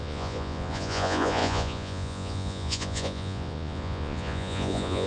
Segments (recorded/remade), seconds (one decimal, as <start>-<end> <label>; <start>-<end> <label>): 0.0-5.1 remade